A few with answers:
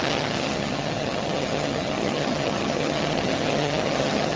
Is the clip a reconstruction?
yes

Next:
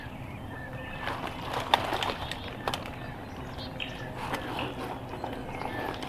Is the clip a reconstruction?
no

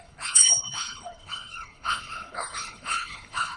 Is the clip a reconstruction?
yes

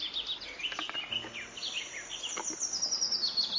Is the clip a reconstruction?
no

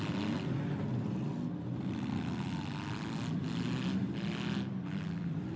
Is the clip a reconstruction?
no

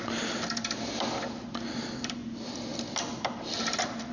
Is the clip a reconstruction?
no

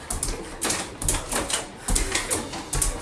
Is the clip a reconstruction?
no